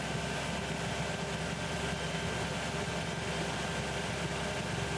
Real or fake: real